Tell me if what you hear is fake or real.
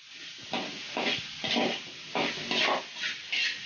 real